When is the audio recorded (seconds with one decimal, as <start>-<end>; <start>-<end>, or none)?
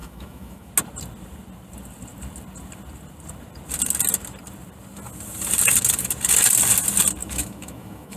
0.7-7.2